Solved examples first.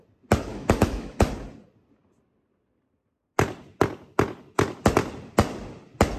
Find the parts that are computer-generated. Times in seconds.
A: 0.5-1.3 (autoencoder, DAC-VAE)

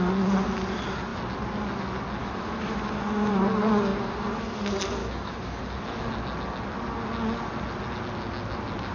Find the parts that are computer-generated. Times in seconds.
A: 2.2-3.3 (autoencoder, DAC-VAE); 5.0-5.6